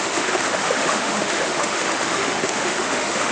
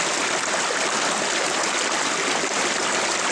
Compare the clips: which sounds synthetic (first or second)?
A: first